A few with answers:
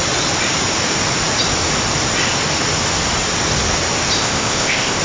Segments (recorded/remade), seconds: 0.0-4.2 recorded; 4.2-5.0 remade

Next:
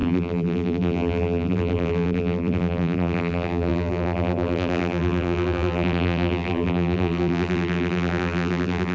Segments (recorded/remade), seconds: 0.0-8.9 remade

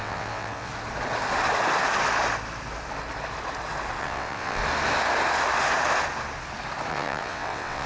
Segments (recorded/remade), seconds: 0.0-0.7 remade; 0.7-4.0 recorded; 4.0-4.6 remade; 4.6-6.9 recorded; 6.9-7.9 remade